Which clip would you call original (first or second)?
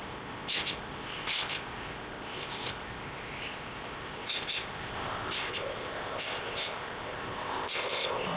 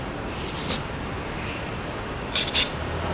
second